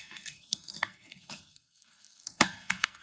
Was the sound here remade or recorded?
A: remade